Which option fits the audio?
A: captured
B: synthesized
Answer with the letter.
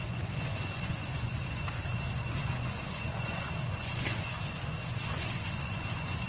B